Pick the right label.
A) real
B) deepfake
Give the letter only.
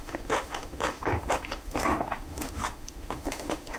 B